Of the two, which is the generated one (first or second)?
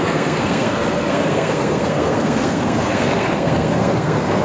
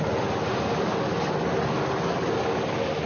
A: first